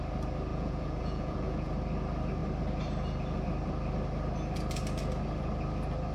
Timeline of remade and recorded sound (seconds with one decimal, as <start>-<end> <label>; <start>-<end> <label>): 0.0-0.5 recorded; 0.5-1.7 remade; 1.7-6.1 recorded